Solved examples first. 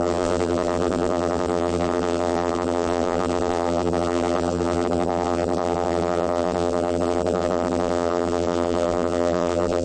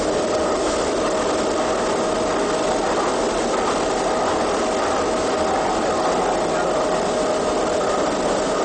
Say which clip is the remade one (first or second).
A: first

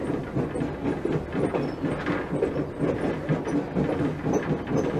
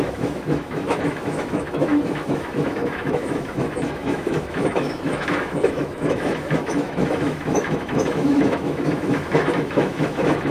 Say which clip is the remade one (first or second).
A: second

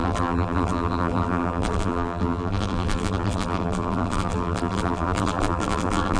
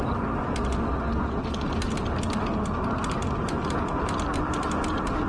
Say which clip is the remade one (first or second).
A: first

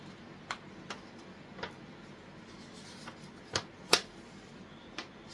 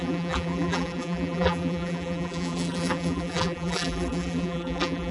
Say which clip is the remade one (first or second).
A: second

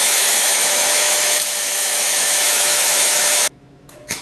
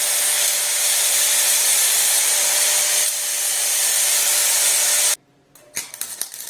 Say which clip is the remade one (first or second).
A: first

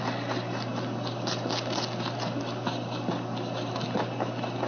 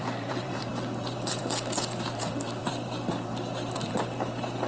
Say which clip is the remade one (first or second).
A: second